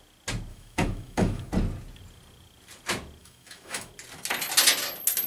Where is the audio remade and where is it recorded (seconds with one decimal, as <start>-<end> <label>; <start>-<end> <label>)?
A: 0.0-0.5 recorded; 0.5-1.5 remade; 1.5-3.2 recorded; 3.2-3.9 remade; 3.9-5.3 recorded